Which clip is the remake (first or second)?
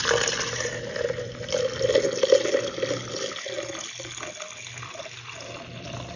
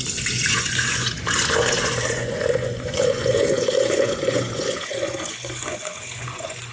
second